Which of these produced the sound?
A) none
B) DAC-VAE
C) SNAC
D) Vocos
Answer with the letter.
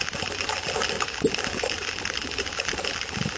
A